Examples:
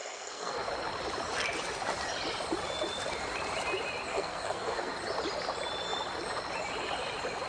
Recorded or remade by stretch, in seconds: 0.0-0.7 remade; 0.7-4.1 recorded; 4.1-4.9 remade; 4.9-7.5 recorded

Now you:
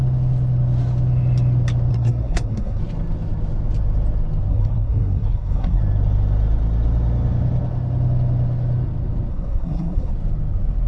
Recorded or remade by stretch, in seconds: 0.0-1.9 recorded; 1.9-2.8 remade; 2.8-4.5 recorded; 4.5-5.8 remade; 5.8-9.3 recorded; 9.3-10.1 remade; 10.1-10.9 recorded

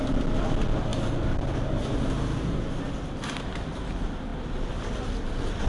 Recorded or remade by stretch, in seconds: 0.0-5.7 recorded

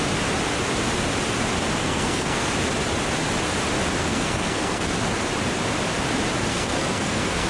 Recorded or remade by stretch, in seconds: 0.0-1.8 recorded; 1.8-2.5 remade; 2.5-4.0 recorded; 4.0-5.0 remade; 5.0-6.5 recorded; 6.5-7.5 remade